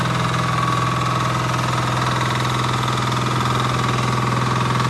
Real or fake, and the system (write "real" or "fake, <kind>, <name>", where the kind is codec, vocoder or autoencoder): real